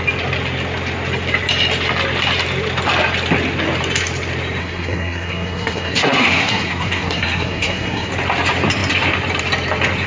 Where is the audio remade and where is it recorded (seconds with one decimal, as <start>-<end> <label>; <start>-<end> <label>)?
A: 0.0-4.6 recorded; 4.6-8.1 remade; 8.1-10.1 recorded